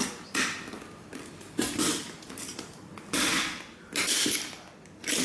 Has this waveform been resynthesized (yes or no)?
yes